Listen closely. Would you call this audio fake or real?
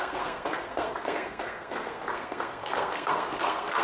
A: fake